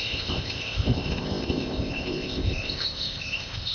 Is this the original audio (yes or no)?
no